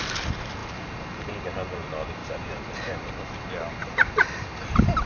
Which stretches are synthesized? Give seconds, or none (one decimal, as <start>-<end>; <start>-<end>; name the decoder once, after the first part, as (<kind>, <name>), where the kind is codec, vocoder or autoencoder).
0.6-1.3 (vocoder, BigVGAN v2); 2.2-3.4; 3.8-5.1